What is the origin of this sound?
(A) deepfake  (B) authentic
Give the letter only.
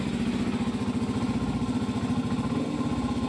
B